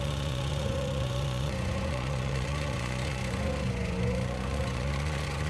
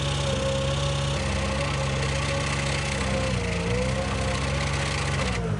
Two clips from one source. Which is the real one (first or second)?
second